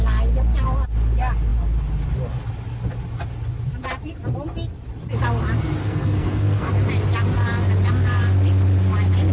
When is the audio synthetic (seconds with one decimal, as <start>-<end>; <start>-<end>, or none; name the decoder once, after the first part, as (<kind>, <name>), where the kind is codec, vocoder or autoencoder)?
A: 5.8-6.7 (codec, SNAC)